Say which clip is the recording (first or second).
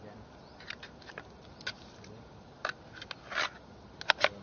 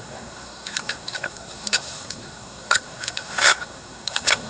first